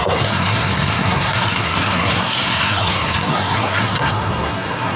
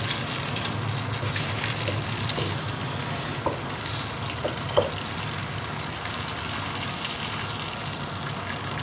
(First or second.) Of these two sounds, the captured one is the second